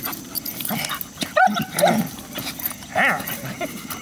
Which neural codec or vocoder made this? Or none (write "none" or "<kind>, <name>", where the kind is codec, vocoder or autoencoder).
none